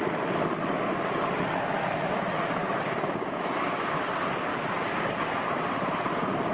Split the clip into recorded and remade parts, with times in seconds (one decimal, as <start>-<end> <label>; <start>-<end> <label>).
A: 0.0-2.6 recorded; 2.6-4.0 remade; 4.0-4.5 recorded; 4.5-5.6 remade; 5.6-6.5 recorded